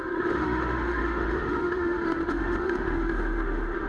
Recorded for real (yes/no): no